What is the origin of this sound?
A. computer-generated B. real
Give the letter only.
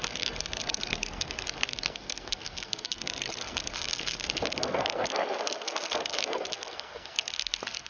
A